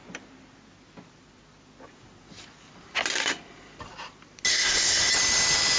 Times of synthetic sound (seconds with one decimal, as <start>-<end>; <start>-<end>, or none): 4.5-5.1